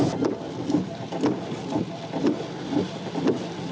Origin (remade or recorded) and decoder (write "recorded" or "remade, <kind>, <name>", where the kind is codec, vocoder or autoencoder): recorded